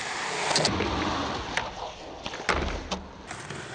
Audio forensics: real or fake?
real